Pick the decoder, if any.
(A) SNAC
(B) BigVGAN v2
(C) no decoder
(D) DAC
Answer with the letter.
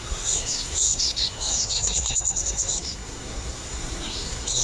A